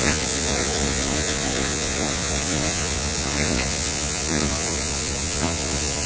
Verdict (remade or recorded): remade